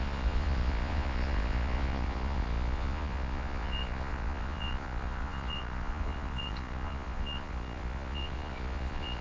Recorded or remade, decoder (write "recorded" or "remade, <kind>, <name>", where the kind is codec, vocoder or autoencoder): remade, vocoder, Vocos